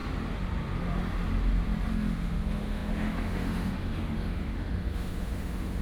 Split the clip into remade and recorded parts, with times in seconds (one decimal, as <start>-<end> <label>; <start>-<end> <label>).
0.0-1.9 recorded; 1.9-5.8 remade